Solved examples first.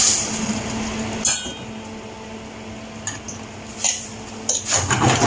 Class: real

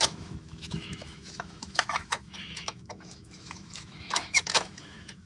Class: fake